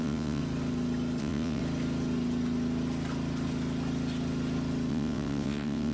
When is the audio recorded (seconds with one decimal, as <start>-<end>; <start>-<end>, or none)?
0.4-1.2; 1.6-4.9